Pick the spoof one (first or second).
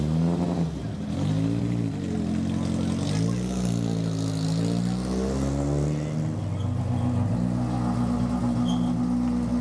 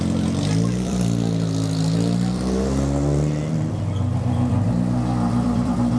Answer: second